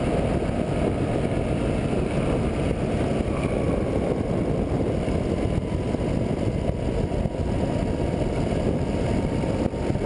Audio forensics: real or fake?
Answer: real